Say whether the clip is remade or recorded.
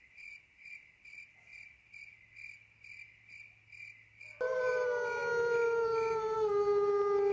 recorded